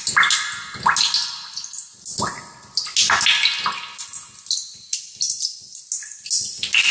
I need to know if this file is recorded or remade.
recorded